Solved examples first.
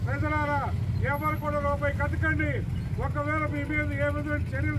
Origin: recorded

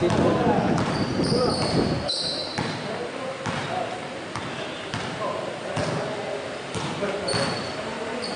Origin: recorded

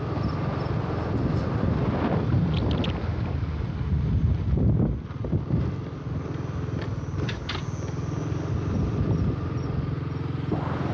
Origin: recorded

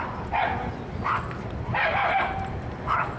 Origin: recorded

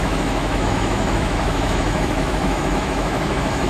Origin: remade